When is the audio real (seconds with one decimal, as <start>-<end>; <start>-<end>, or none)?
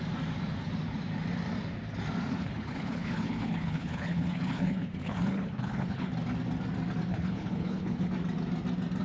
0.0-2.3; 6.1-7.1; 8.1-9.0